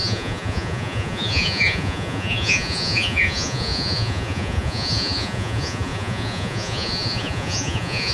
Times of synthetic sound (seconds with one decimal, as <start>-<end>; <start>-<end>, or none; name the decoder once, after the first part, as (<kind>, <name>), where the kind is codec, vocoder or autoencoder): 0.0-8.1 (vocoder, Vocos)